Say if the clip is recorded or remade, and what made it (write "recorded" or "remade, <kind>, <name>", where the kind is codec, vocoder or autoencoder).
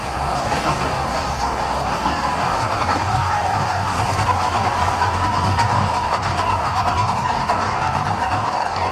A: remade, codec, DAC